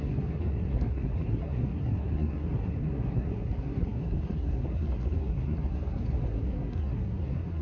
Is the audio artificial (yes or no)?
yes